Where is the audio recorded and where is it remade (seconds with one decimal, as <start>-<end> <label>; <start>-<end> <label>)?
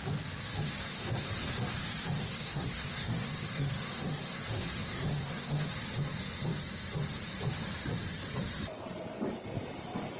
0.0-0.8 recorded; 0.8-1.5 remade; 1.5-2.2 recorded; 2.2-5.7 remade; 5.7-10.2 recorded